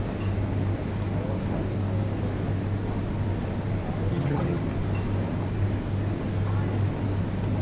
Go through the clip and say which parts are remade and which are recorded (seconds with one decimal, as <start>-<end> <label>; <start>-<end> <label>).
0.0-4.1 recorded; 4.1-4.6 remade; 4.6-7.6 recorded